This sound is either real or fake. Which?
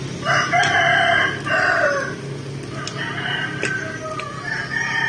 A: real